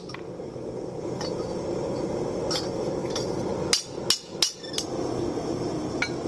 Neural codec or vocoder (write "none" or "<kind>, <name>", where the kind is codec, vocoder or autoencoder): none